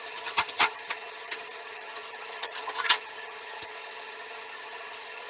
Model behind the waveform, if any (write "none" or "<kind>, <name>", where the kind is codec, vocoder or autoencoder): vocoder, HiFi-GAN